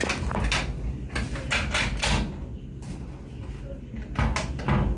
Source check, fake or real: real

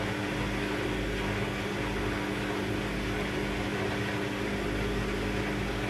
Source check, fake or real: real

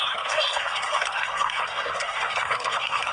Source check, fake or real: fake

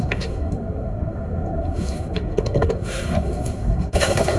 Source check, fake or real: fake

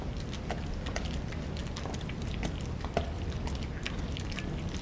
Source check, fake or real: real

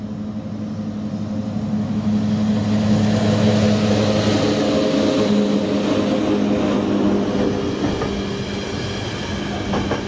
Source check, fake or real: real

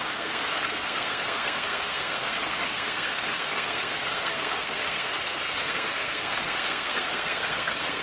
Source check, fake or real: fake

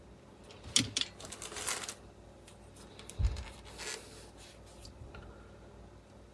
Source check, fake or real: real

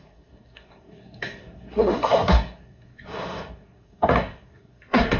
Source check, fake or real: fake